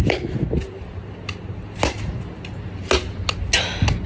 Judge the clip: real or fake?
real